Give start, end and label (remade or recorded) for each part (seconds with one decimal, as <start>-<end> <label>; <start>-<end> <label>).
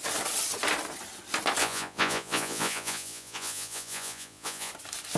0.0-1.6 recorded; 1.6-4.7 remade; 4.7-5.2 recorded